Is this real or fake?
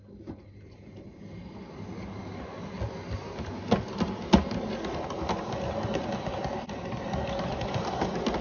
real